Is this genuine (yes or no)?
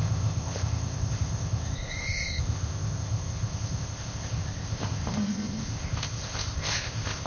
no